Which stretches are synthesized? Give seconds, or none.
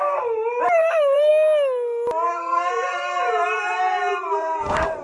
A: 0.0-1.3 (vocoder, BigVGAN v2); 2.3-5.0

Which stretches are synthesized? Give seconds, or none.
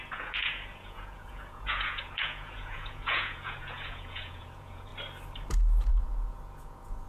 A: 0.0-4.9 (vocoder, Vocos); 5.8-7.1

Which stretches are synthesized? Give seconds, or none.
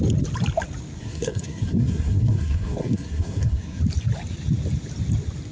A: 1.0-3.8 (codec, SNAC)